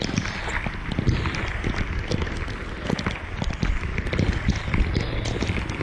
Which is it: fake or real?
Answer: real